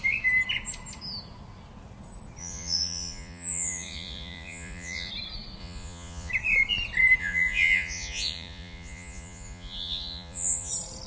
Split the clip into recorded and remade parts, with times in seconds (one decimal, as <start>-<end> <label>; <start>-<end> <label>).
0.0-2.4 recorded; 2.4-5.1 remade; 5.1-5.6 recorded; 5.6-6.3 remade; 6.3-7.2 recorded; 7.2-10.7 remade; 10.7-11.1 recorded